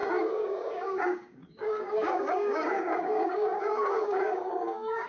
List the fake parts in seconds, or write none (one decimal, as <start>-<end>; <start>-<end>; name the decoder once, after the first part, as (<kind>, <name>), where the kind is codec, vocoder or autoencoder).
0.0-5.1 (codec, DAC)